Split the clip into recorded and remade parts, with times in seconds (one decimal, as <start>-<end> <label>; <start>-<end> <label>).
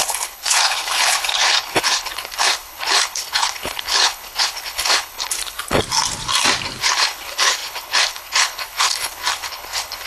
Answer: 0.0-5.8 remade; 5.8-6.8 recorded; 6.8-10.1 remade